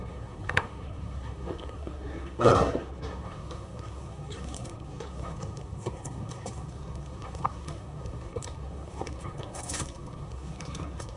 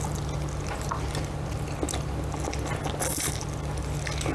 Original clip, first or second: second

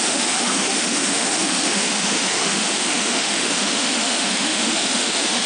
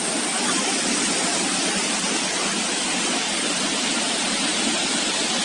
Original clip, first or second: second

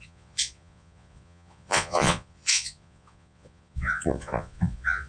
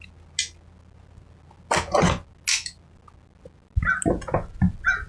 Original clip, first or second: second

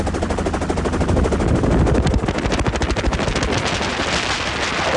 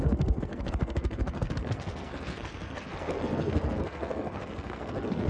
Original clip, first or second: first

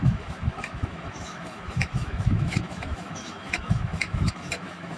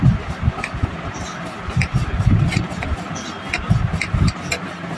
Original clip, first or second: second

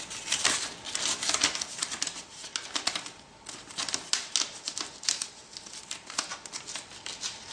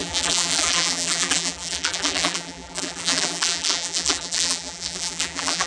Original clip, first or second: first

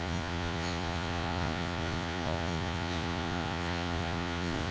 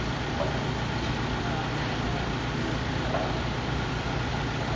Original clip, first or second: second